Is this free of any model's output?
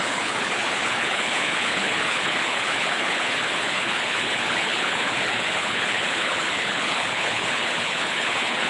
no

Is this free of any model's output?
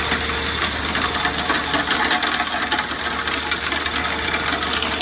yes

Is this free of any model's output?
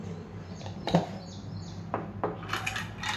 yes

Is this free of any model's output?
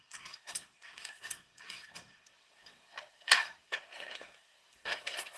no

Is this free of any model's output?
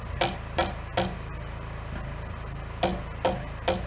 yes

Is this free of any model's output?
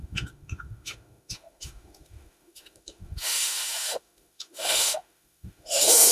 no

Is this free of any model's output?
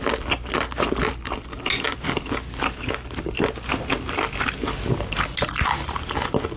yes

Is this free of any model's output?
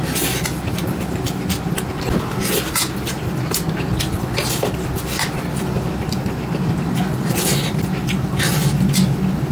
yes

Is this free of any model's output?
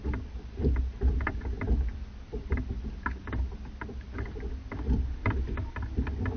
yes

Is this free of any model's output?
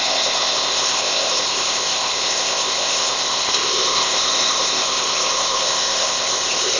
no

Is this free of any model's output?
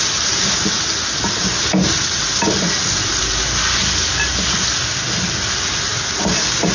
yes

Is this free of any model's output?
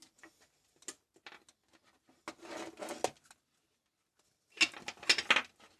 yes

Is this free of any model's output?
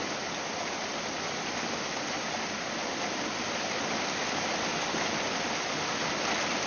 yes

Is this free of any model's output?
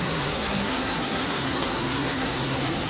no